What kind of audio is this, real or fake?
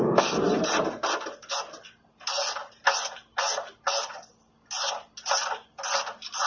real